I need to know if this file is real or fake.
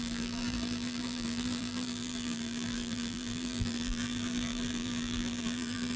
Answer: fake